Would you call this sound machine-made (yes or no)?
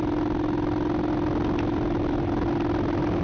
no